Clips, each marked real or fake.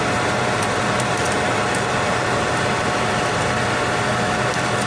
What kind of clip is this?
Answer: real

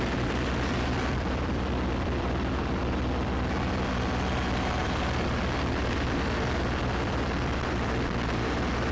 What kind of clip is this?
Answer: fake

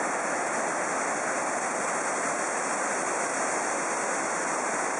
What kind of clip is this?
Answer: real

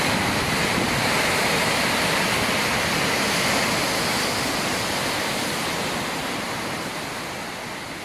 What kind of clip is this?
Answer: real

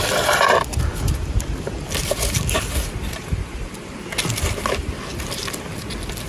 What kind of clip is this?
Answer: real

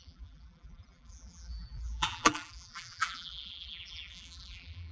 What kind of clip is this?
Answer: fake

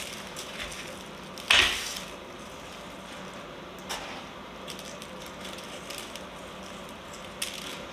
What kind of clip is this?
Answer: real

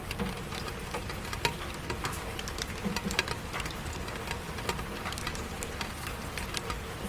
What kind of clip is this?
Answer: real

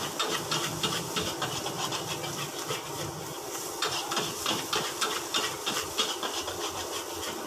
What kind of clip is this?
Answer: real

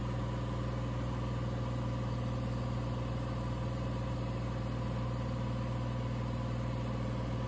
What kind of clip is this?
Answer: real